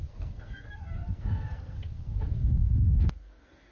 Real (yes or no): no